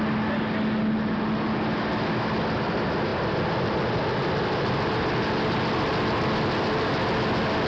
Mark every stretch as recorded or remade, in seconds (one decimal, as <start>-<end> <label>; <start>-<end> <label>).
0.0-7.7 recorded

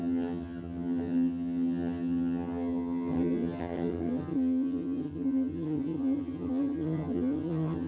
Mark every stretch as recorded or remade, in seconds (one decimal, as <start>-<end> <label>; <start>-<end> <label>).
0.0-7.9 remade

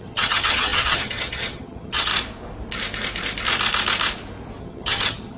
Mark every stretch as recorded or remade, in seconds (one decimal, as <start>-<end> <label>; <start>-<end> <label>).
0.0-2.1 remade; 2.1-4.6 recorded; 4.6-5.4 remade